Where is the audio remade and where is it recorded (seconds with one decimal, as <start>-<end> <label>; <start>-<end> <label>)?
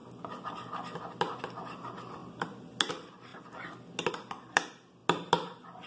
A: 0.0-1.4 recorded; 1.4-2.2 remade; 2.2-2.9 recorded; 2.9-3.3 remade; 3.3-4.1 recorded; 4.1-5.0 remade; 5.0-5.9 recorded